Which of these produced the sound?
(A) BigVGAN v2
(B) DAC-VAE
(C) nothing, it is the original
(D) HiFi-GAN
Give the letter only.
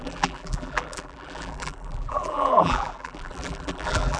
A